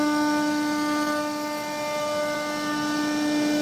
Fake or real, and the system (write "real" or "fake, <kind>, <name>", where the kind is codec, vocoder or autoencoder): real